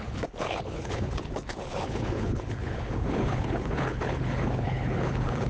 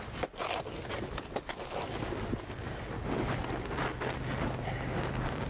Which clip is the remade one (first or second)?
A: first